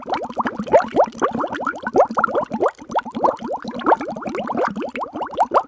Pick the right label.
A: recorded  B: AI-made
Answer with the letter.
A